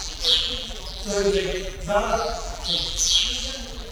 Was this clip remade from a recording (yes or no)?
yes